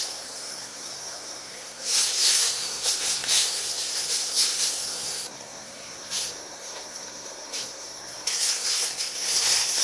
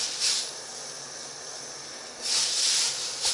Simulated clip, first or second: first